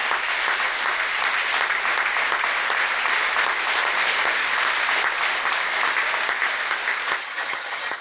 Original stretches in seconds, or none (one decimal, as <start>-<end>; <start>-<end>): 0.0-7.2